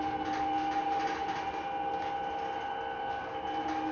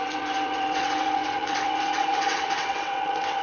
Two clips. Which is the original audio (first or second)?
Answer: first